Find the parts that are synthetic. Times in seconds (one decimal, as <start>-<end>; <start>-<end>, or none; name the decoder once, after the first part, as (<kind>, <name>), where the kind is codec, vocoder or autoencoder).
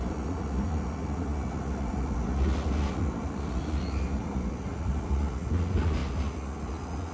0.0-7.1 (vocoder, Vocos)